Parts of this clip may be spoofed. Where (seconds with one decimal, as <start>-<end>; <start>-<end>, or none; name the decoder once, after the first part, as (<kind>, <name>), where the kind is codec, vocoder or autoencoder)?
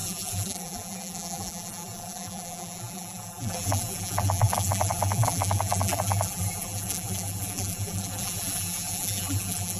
0.0-9.8 (vocoder, BigVGAN v2)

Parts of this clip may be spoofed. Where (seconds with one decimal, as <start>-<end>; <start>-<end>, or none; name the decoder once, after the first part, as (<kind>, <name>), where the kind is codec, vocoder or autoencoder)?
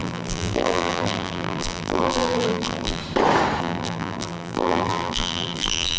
0.0-3.0 (vocoder, BigVGAN v2); 3.6-6.0